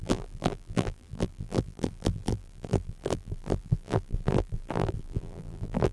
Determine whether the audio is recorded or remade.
remade